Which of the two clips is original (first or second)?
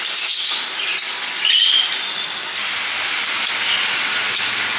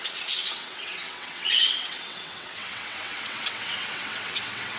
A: first